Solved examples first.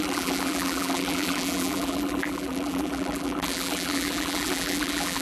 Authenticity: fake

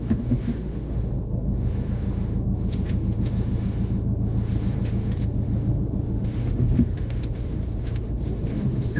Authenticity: fake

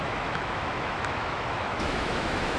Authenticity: fake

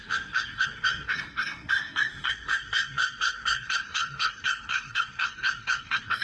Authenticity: fake